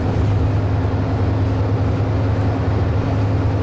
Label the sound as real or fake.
real